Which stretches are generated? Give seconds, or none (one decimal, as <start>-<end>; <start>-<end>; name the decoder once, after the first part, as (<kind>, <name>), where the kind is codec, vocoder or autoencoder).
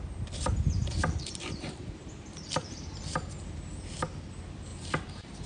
0.8-3.7 (vocoder, BigVGAN v2); 4.7-5.5